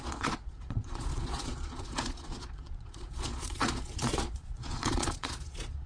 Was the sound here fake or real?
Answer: fake